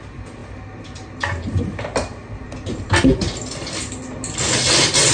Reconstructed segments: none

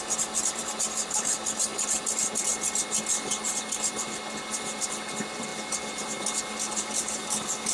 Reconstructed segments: 0.0-1.7 (vocoder, BigVGAN v2); 4.4-7.7

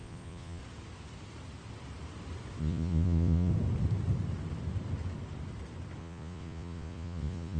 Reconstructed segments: 0.0-0.6 (vocoder, Vocos); 2.6-3.5; 6.0-7.6